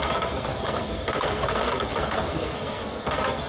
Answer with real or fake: fake